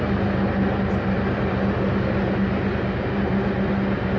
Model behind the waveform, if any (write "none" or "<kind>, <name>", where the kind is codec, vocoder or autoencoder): none